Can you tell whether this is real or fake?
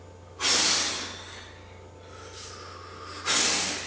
real